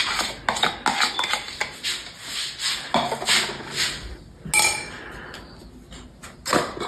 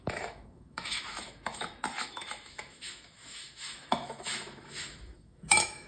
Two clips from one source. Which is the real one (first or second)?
first